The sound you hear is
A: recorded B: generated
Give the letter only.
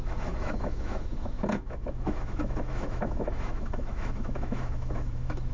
B